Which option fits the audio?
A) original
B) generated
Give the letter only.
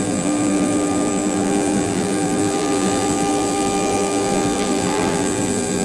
B